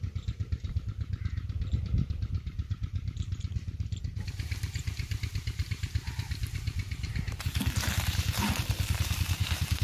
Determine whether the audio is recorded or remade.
remade